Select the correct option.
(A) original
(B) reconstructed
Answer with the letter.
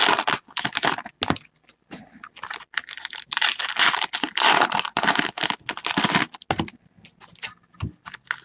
A